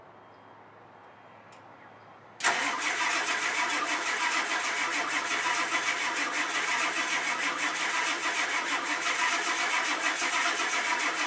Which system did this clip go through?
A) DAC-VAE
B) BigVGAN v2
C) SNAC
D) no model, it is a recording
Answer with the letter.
D